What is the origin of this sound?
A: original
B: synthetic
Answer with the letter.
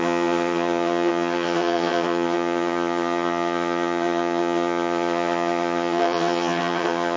B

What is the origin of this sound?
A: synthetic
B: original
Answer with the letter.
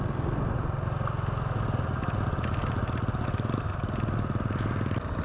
B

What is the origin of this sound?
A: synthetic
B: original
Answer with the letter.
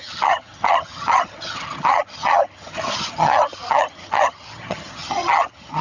A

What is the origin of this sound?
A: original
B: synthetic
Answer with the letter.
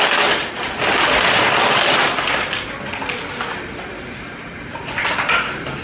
A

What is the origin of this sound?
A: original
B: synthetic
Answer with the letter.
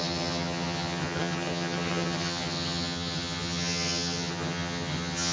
B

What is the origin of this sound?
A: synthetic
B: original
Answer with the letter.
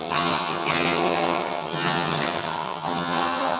A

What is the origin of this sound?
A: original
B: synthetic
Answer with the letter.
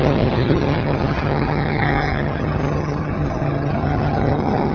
B